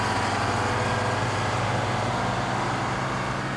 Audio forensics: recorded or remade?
recorded